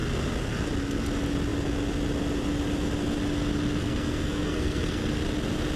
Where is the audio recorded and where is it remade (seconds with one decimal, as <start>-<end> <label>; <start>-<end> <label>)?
0.0-3.8 recorded; 3.8-5.1 remade; 5.1-5.8 recorded